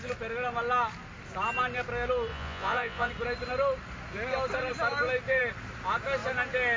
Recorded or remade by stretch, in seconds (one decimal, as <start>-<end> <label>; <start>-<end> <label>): 0.0-2.3 recorded; 2.3-3.1 remade; 3.1-6.8 recorded